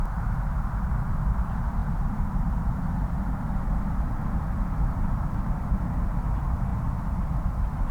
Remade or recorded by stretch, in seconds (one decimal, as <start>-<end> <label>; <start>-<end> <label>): 0.0-7.9 remade